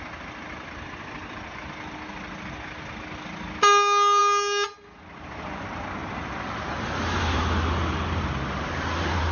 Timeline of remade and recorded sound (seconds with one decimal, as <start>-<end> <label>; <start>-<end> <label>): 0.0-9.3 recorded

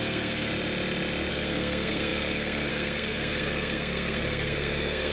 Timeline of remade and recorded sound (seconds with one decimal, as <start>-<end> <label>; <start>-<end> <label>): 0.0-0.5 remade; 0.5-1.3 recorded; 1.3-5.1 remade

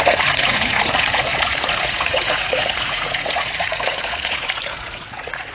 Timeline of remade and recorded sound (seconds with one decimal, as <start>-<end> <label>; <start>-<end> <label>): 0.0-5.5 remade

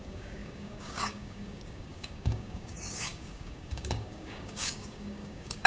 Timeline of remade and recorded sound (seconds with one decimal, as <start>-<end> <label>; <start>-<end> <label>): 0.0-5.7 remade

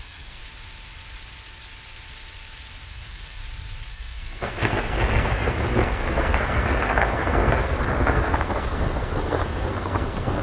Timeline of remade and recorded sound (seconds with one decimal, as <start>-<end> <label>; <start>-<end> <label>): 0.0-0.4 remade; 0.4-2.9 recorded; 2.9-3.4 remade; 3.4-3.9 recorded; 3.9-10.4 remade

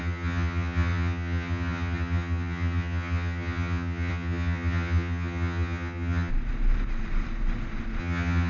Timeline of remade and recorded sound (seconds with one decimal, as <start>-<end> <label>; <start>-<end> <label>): 0.0-6.3 remade; 6.3-8.0 recorded; 8.0-8.5 remade